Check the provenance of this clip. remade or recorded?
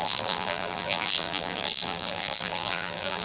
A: remade